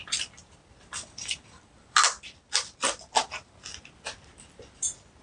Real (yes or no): yes